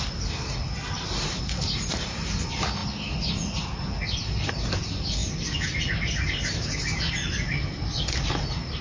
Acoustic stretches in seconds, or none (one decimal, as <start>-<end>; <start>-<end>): 0.0-8.8